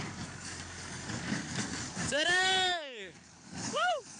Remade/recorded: remade